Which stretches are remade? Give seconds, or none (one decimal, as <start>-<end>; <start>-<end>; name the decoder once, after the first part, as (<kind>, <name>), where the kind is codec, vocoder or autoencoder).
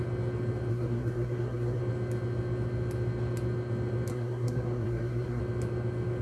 0.7-1.8 (codec, SNAC); 4.1-5.4